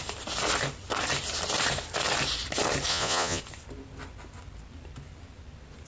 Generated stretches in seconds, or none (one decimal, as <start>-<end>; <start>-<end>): 2.9-3.4